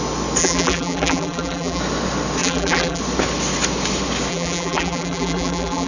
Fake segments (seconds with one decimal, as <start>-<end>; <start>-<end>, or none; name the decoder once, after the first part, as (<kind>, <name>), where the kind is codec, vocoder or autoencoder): 0.4-1.8 (vocoder, BigVGAN v2); 2.4-3.0; 4.3-5.9